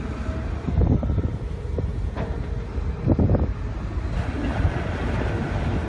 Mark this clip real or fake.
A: real